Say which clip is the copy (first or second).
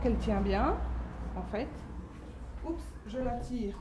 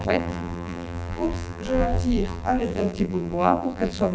second